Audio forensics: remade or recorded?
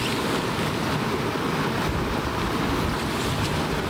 recorded